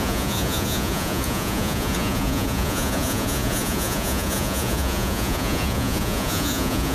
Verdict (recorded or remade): remade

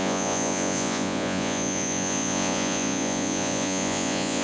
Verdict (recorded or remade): remade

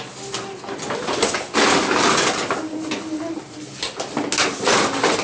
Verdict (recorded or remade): recorded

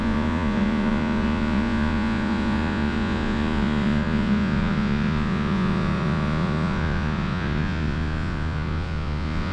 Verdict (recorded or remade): remade